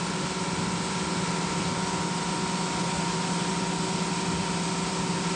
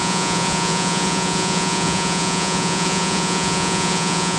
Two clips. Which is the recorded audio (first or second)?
first